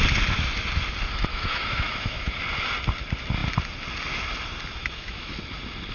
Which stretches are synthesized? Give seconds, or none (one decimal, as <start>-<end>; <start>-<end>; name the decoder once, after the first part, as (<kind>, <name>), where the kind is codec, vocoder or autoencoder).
1.3-2.4 (autoencoder, DAC-VAE); 4.8-5.3